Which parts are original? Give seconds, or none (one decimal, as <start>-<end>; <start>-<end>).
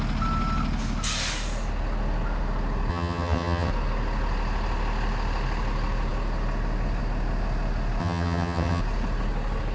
0.0-2.9; 3.7-8.0; 8.8-9.7